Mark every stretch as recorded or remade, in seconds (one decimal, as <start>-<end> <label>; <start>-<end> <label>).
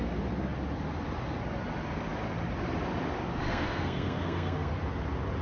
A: 0.0-3.5 recorded; 3.5-4.8 remade; 4.8-5.4 recorded